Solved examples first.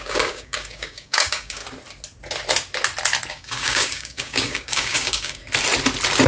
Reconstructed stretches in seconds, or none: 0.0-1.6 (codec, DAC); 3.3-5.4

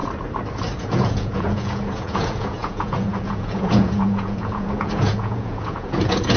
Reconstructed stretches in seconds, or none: 0.8-6.4 (vocoder, Vocos)

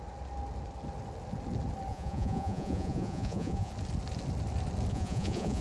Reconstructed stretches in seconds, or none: 1.9-3.7 (vocoder, Vocos); 4.9-5.6

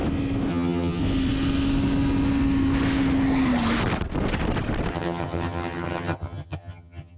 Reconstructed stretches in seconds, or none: 0.5-1.0 (vocoder, HiFi-GAN); 4.9-7.2

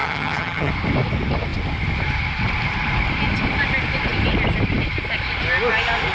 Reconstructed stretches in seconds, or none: 0.0-0.7 (vocoder, HiFi-GAN)